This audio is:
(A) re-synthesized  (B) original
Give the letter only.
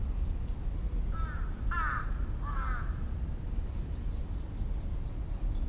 B